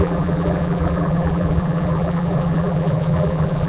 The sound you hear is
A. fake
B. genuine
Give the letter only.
A